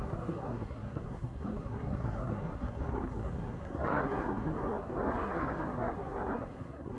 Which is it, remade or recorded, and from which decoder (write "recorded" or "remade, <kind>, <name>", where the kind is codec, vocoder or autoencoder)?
remade, codec, SNAC